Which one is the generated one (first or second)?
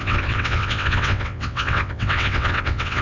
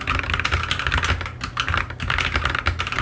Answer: first